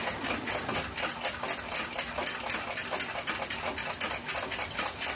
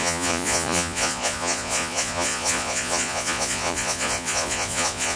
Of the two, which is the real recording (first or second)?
first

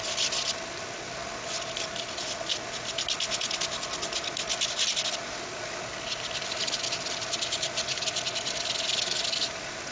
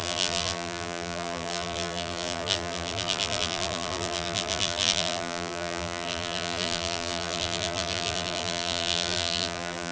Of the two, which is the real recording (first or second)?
first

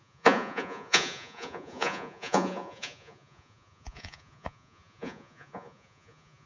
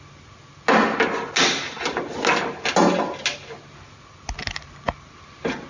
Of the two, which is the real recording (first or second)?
second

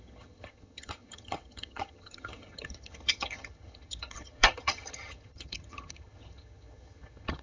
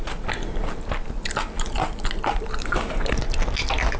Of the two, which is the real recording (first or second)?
second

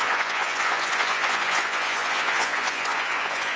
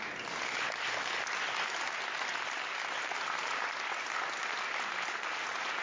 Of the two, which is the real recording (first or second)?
second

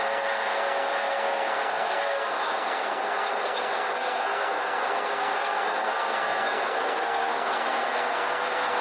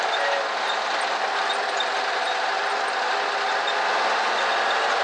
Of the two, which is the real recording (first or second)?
second